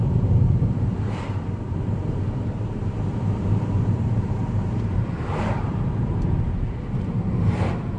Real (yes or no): no